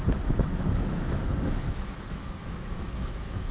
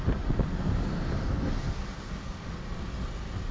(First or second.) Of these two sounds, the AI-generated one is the first